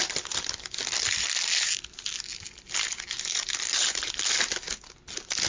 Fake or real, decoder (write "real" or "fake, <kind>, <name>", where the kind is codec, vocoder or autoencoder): real